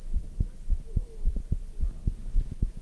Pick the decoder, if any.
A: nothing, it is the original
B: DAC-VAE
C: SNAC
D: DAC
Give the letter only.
A